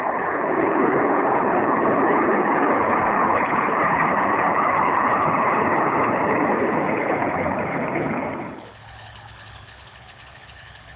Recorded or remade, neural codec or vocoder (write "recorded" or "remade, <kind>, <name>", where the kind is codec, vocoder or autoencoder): remade, codec, HILCodec